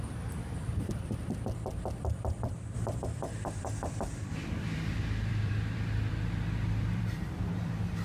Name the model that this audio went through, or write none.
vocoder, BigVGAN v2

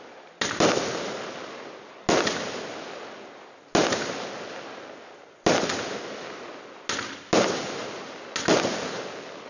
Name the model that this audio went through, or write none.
none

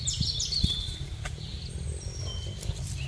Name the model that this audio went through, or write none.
none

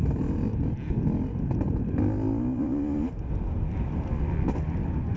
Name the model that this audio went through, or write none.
none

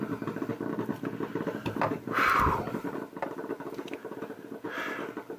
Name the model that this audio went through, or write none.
none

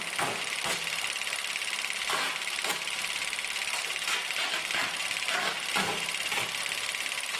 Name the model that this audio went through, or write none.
none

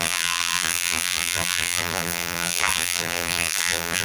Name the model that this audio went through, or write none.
vocoder, BigVGAN v2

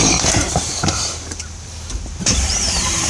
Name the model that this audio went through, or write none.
vocoder, BigVGAN v2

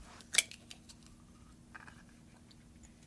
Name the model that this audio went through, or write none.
none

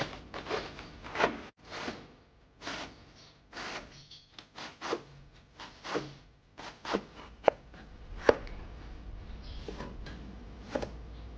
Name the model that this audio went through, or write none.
none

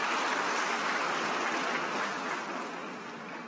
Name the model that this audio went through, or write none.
none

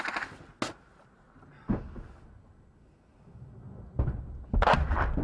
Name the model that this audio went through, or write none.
none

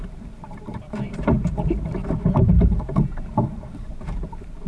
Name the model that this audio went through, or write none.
vocoder, BigVGAN v2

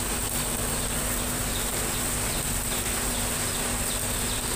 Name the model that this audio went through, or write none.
none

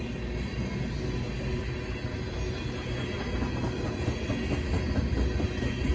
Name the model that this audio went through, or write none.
none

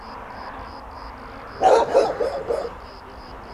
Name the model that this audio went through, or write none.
vocoder, BigVGAN v2